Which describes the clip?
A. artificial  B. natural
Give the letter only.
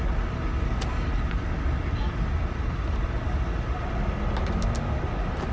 B